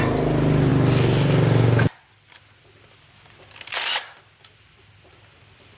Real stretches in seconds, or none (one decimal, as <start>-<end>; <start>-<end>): 0.0-5.8